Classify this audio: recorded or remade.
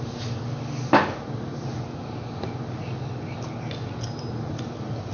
recorded